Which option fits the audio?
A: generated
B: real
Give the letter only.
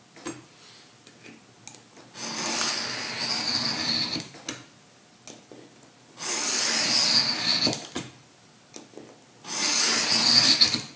B